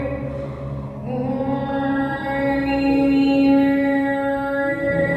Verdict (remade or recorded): recorded